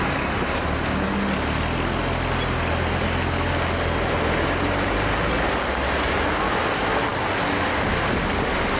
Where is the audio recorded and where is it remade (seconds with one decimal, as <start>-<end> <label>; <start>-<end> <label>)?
0.0-8.8 recorded